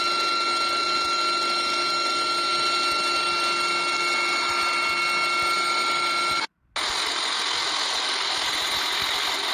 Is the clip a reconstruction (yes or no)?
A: no